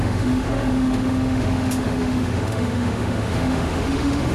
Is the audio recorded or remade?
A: remade